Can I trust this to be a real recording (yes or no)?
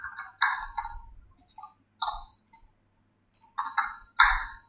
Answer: yes